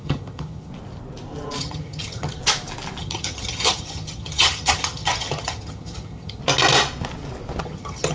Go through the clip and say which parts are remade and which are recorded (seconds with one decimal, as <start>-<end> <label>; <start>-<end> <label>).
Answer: 0.0-0.7 remade; 0.7-1.6 recorded; 1.6-2.4 remade; 2.4-3.0 recorded; 3.0-6.4 remade; 6.4-7.6 recorded; 7.6-8.1 remade